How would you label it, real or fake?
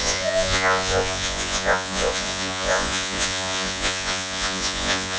fake